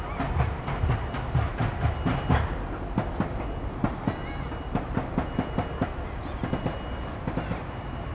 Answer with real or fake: real